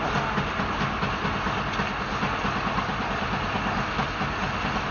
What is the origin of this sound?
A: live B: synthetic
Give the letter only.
A